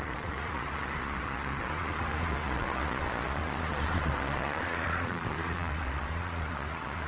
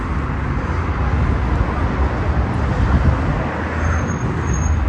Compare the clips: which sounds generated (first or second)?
first